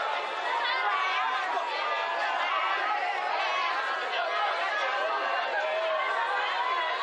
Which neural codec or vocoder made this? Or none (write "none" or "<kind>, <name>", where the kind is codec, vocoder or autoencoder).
none